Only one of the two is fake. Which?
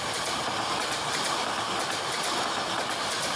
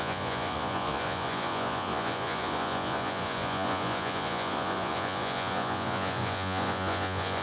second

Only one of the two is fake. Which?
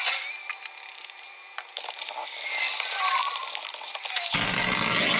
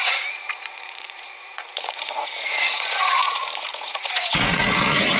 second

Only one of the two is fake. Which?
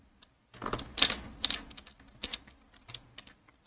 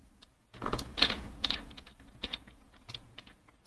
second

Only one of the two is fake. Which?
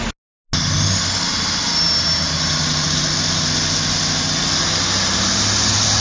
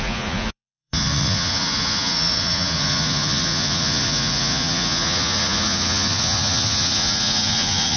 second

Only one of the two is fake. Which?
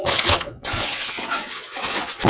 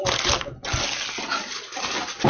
first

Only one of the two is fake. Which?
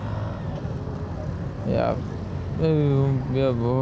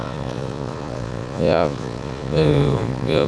second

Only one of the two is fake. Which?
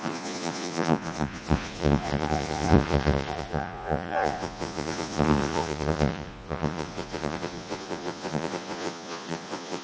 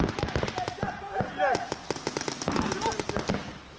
first